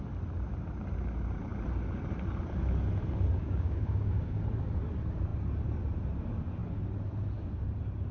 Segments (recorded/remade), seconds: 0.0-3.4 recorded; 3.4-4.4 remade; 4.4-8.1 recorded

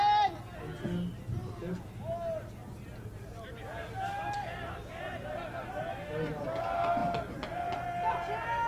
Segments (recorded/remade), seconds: 0.0-1.4 recorded; 1.4-2.0 remade; 2.0-2.6 recorded; 2.6-5.7 remade; 5.7-8.7 recorded

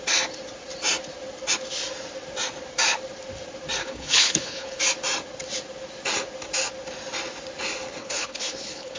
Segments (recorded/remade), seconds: 0.0-3.8 recorded; 3.8-4.8 remade; 4.8-8.0 recorded; 8.0-9.0 remade

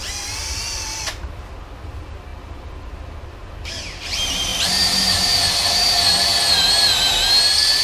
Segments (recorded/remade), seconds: 0.0-7.8 recorded

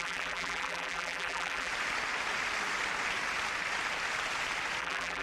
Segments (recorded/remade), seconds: 0.0-1.7 remade; 1.7-4.8 recorded; 4.8-5.2 remade